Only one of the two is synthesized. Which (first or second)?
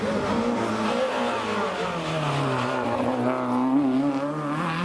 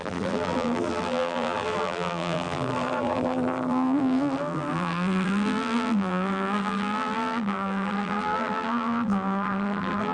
second